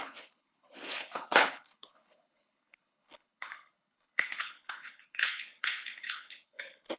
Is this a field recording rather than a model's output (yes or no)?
no